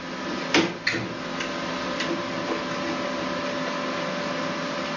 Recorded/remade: recorded